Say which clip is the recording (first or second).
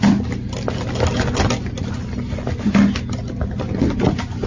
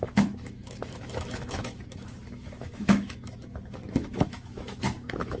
first